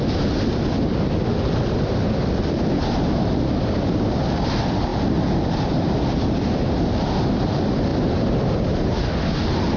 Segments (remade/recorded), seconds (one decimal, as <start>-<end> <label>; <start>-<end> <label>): 0.0-9.8 recorded